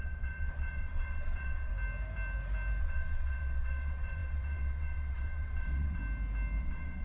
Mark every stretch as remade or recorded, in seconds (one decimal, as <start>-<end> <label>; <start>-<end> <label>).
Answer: 0.0-1.7 remade; 1.7-2.8 recorded; 2.8-6.0 remade; 6.0-6.6 recorded; 6.6-7.0 remade